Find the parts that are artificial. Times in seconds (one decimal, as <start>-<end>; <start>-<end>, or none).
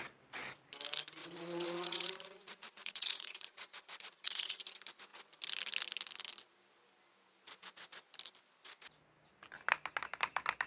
1.2-4.6